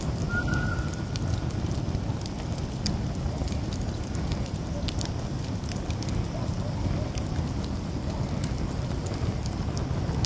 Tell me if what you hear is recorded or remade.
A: recorded